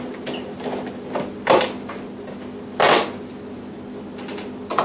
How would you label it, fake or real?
real